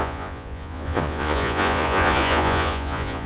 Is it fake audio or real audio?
fake